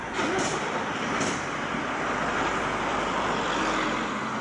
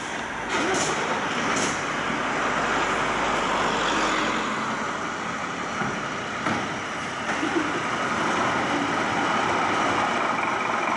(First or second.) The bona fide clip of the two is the second